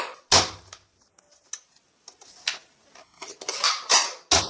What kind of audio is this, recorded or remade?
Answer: recorded